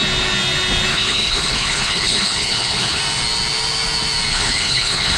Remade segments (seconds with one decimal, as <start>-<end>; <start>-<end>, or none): 0.9-3.0; 4.3-5.2